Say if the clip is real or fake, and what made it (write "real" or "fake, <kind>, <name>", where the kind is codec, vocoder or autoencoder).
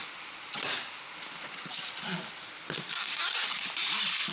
real